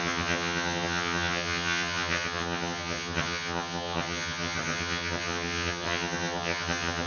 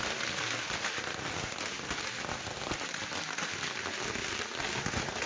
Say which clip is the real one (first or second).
second